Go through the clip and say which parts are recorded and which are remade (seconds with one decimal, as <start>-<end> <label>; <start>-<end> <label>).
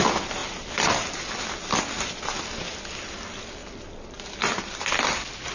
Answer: 0.0-5.5 recorded